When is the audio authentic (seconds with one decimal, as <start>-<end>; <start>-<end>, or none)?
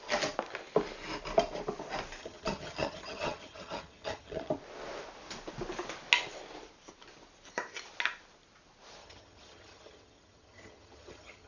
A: 0.0-2.2; 4.5-9.0